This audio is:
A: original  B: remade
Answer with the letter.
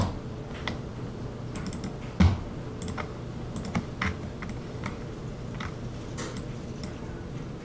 A